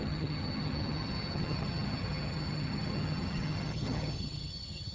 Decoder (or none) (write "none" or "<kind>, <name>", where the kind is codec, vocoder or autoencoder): vocoder, HiFi-GAN